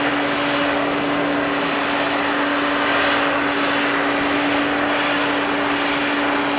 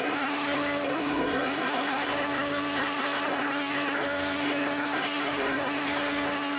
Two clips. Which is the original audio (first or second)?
first